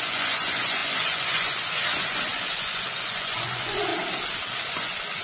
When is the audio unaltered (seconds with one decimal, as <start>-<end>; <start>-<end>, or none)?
3.9-4.7